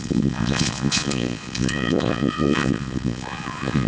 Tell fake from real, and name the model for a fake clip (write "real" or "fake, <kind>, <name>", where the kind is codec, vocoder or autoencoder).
fake, vocoder, Vocos